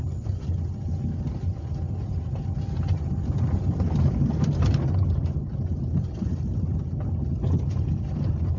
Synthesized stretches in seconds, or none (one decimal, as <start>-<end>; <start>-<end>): none